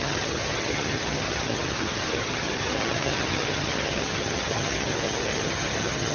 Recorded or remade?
remade